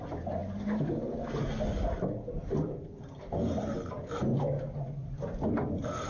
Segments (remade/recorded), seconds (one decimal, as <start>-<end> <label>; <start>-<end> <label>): 0.0-6.1 recorded